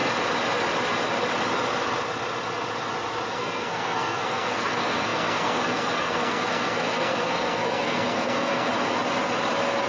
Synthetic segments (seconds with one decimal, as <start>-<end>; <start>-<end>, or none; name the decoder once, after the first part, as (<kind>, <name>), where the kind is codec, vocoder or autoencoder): 3.3-8.7 (codec, SNAC)